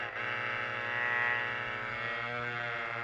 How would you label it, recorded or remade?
recorded